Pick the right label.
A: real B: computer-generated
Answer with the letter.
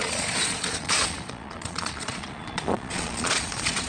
B